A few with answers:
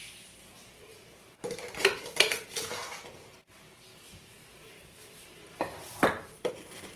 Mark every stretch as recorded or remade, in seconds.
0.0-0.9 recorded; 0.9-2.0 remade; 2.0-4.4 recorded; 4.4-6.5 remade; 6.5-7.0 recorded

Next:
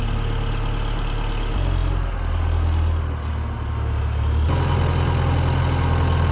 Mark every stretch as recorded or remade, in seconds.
0.0-6.3 recorded

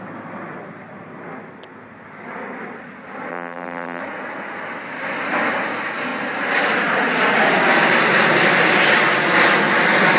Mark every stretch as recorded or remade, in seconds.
0.0-3.3 recorded; 3.3-4.0 remade; 4.0-10.2 recorded

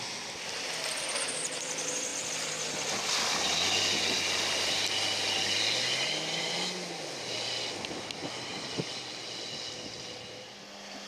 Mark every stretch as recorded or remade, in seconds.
0.0-11.1 recorded

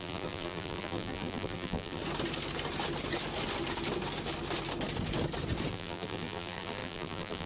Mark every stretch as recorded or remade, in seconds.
0.0-2.0 remade; 2.0-5.7 recorded; 5.7-7.5 remade

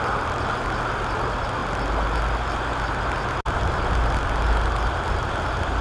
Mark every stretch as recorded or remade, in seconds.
0.0-5.8 recorded

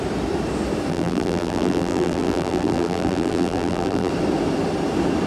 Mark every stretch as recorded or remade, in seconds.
0.0-0.9 recorded; 0.9-4.1 remade; 4.1-5.3 recorded

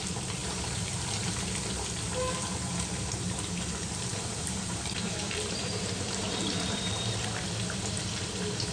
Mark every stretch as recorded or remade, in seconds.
0.0-0.4 recorded; 0.4-0.9 remade; 0.9-4.1 recorded; 4.1-7.2 remade; 7.2-8.7 recorded